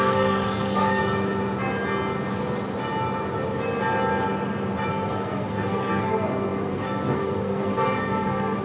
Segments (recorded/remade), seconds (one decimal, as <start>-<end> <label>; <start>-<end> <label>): 0.0-1.0 remade; 1.0-4.9 recorded; 4.9-8.6 remade